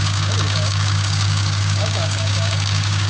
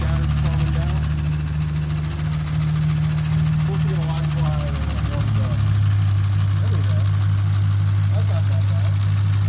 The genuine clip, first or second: second